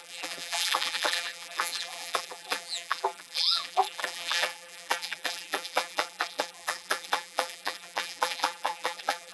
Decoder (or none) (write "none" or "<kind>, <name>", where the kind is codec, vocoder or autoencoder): vocoder, BigVGAN v2